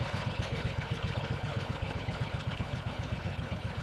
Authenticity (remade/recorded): remade